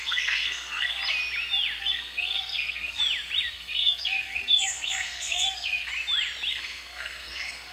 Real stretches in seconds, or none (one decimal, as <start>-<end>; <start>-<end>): 1.0-1.8; 3.0-3.5; 5.9-6.5